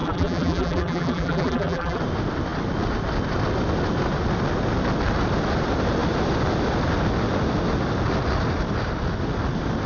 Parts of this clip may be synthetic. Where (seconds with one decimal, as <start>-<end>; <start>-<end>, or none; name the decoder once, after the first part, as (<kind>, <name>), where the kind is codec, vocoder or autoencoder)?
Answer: 0.0-2.0 (vocoder, BigVGAN v2)